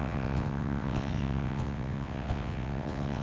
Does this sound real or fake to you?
fake